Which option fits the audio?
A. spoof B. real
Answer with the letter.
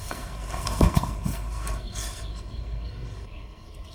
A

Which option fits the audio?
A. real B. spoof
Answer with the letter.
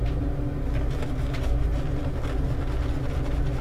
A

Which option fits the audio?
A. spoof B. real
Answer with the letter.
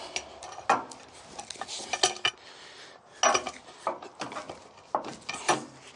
B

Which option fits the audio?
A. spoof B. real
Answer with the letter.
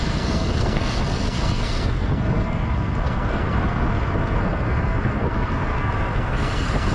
A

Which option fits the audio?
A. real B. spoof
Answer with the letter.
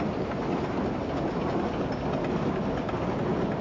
A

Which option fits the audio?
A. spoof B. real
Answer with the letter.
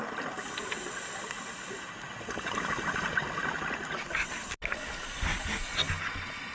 B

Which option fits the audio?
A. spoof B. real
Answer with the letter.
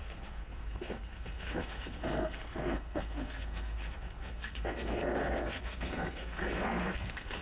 A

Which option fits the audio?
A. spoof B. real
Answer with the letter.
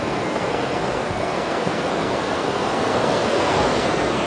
A